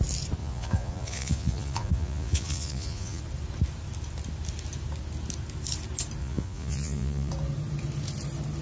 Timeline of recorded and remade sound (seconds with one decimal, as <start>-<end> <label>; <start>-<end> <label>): 0.0-0.4 recorded; 0.4-3.2 remade; 3.2-6.2 recorded; 6.2-7.3 remade; 7.3-8.6 recorded